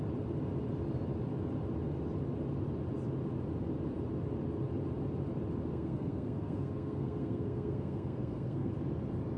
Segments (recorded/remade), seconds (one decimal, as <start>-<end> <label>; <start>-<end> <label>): 0.0-5.7 recorded; 5.7-8.7 remade; 8.7-9.4 recorded